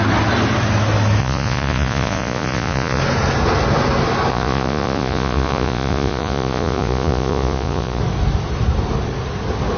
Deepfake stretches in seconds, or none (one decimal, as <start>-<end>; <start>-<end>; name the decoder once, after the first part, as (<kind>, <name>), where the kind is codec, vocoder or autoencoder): 1.2-3.0 (vocoder, Vocos); 4.3-8.0